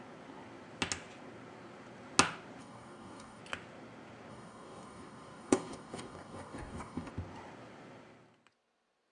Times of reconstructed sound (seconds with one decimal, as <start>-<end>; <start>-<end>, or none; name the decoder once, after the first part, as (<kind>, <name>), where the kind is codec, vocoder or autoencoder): 2.6-3.4 (codec, DAC); 4.3-7.1

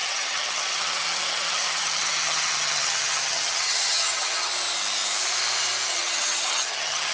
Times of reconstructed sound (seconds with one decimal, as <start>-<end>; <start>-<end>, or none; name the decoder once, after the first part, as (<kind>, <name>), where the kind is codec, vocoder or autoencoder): 0.0-4.5 (vocoder, HiFi-GAN); 5.9-7.1

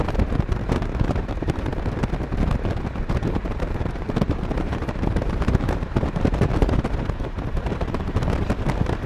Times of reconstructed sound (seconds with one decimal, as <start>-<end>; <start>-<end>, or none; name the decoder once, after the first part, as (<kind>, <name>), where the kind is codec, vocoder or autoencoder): 0.0-1.7 (vocoder, BigVGAN v2); 3.0-9.1

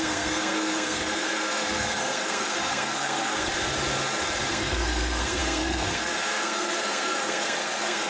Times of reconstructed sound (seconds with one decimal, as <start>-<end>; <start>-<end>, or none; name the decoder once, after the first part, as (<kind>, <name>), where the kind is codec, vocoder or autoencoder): 0.0-3.5 (codec, SNAC); 4.5-8.1

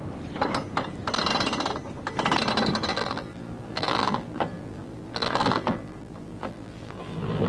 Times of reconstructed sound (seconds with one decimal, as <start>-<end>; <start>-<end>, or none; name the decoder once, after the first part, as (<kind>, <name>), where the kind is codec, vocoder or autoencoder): 2.9-7.5 (vocoder, BigVGAN v2)

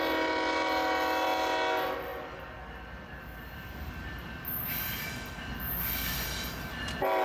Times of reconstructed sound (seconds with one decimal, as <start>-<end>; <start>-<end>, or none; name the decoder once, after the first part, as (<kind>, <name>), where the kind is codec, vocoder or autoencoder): none

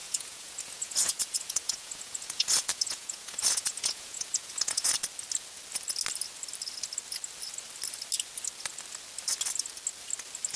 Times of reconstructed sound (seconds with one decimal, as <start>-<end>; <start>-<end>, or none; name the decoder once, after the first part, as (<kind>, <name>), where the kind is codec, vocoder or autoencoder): 0.0-4.9 (vocoder, Vocos)

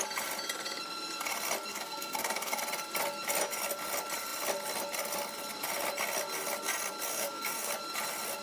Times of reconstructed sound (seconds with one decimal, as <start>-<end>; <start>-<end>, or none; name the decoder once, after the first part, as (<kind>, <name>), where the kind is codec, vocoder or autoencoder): 1.7-2.6 (codec, SNAC); 7.1-7.7